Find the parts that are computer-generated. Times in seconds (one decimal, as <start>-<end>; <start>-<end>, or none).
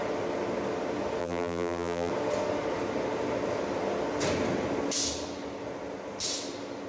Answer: 1.2-2.1